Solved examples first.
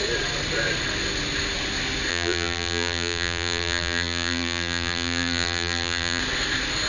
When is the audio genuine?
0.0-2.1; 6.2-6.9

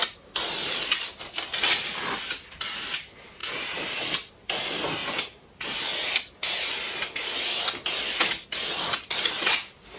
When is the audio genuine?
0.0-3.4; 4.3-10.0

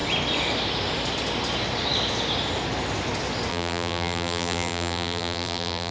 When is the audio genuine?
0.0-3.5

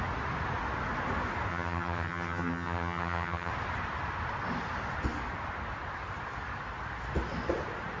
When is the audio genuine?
0.0-1.5; 3.5-8.0

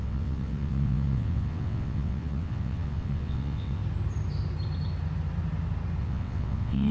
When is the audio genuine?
3.8-6.0